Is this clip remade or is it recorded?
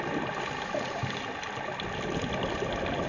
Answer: recorded